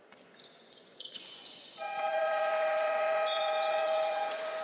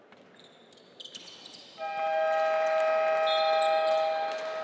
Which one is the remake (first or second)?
first